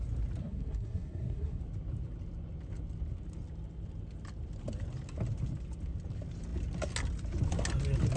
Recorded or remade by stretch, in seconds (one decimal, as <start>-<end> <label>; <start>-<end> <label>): 0.0-0.4 recorded; 0.4-1.6 remade; 1.6-8.2 recorded